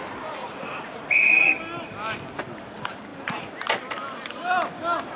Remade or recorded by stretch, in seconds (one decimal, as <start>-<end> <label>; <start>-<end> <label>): 0.0-0.4 recorded; 0.4-1.5 remade; 1.5-5.2 recorded